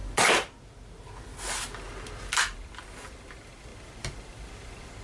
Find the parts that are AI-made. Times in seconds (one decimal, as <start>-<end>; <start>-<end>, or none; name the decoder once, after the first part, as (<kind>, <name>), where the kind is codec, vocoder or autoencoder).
none